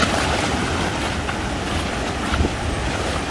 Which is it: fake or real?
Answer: real